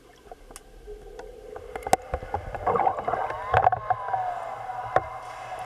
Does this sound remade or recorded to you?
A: recorded